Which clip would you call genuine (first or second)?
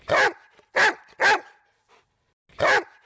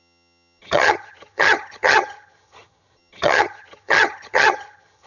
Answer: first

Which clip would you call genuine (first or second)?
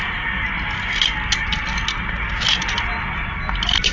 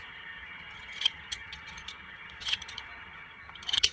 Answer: first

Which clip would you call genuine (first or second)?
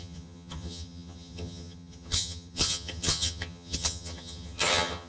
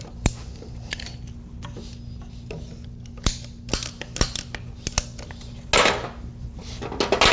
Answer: second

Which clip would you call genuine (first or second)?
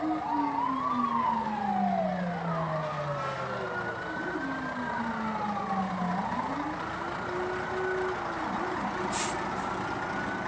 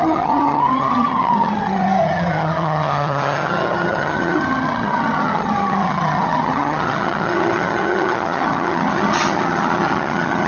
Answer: first